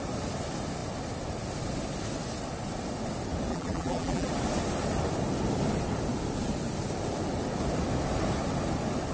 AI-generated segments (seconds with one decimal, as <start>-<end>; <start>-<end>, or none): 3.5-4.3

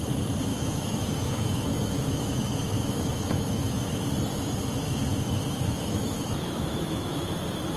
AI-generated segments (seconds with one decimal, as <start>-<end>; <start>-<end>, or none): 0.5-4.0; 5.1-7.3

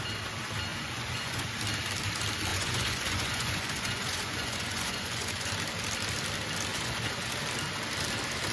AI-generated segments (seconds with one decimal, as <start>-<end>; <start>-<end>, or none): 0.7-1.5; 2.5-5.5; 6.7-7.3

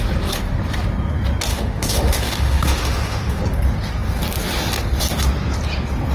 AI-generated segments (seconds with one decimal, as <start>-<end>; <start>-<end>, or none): 1.5-3.4

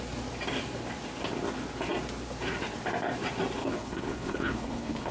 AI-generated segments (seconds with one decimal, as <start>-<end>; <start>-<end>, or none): 3.6-5.1